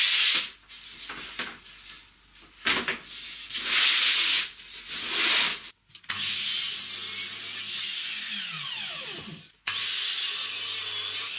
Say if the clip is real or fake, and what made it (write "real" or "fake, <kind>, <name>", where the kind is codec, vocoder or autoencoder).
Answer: real